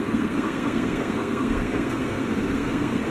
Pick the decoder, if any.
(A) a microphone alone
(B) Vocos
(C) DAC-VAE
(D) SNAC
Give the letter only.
D